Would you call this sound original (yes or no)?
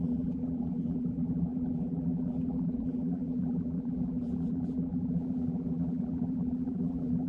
no